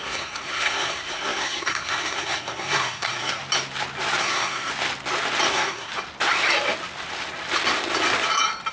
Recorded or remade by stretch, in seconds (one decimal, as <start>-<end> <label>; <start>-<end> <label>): 0.0-3.4 remade; 3.4-4.2 recorded; 4.2-4.7 remade; 4.7-5.5 recorded; 5.5-5.9 remade; 5.9-8.7 recorded